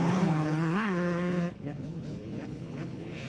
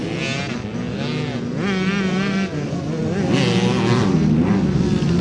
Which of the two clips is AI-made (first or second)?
first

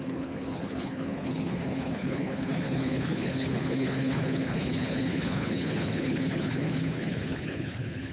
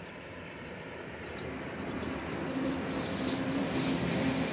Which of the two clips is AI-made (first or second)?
first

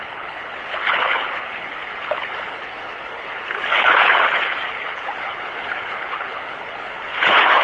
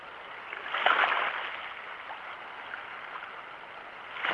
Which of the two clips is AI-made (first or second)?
first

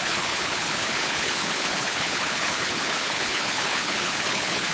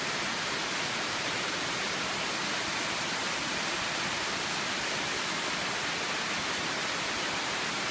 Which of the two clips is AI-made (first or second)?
first